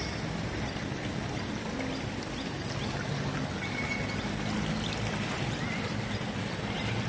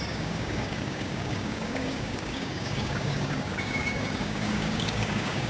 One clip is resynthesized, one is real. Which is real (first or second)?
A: first